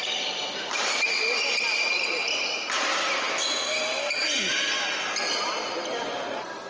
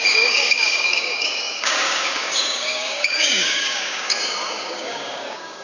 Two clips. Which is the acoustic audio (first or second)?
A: first